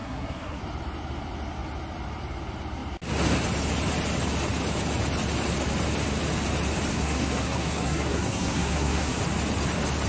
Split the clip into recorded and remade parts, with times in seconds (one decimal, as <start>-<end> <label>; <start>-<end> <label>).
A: 0.0-0.6 remade; 0.6-6.9 recorded; 6.9-9.2 remade; 9.2-10.1 recorded